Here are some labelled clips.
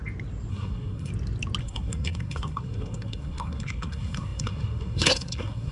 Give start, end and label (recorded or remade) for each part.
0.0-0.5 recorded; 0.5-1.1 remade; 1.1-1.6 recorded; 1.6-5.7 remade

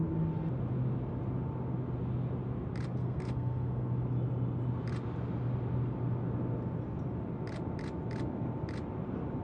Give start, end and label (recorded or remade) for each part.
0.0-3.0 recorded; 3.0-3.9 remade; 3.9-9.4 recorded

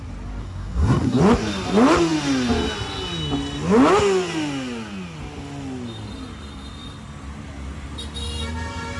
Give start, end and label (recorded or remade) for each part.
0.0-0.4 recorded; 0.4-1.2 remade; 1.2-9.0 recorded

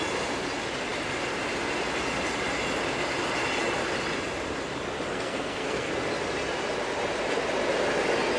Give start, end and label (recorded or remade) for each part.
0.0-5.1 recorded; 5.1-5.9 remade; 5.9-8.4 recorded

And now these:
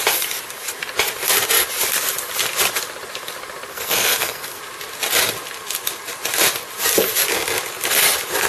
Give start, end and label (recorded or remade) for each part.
0.0-3.7 recorded; 3.7-4.6 remade; 4.6-8.5 recorded